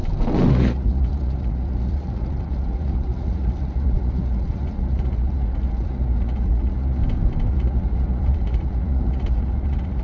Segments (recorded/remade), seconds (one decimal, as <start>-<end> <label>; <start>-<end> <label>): 0.0-0.5 recorded; 0.5-7.0 remade; 7.0-7.5 recorded; 7.5-10.0 remade